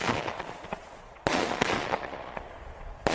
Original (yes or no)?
no